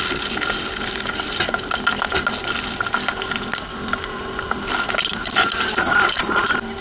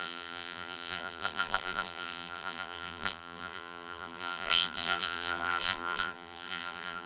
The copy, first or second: second